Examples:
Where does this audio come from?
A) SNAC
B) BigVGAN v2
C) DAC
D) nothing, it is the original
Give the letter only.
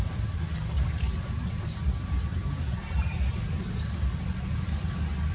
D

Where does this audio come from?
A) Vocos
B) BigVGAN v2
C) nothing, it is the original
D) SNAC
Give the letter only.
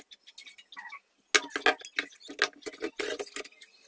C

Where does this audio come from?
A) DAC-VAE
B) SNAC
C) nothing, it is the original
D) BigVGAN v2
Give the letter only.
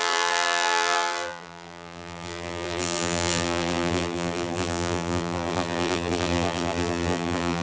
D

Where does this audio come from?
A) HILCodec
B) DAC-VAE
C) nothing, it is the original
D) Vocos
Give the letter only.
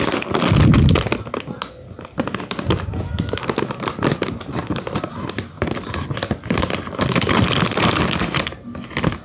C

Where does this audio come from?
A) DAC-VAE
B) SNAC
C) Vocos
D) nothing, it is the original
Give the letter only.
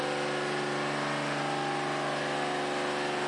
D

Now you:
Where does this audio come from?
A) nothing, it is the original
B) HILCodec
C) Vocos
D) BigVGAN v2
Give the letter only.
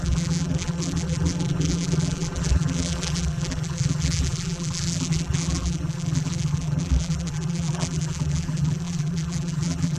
D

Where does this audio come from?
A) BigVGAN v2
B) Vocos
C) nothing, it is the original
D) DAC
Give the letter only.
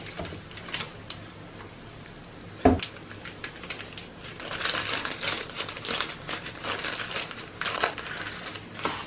C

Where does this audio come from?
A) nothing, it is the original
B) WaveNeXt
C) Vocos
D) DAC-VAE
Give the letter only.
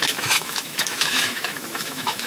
D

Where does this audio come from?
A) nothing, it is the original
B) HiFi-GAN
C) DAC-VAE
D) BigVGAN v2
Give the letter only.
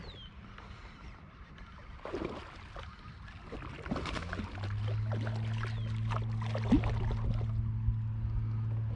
A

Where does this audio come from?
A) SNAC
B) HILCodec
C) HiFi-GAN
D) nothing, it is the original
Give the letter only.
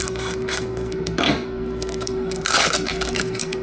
A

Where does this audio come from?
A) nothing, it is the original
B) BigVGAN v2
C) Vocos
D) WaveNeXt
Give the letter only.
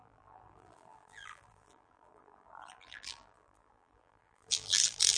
B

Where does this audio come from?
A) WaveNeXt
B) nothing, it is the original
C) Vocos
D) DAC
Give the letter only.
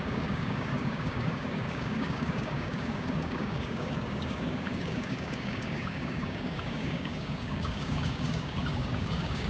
D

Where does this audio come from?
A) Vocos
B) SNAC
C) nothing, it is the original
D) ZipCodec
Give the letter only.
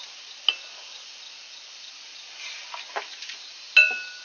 C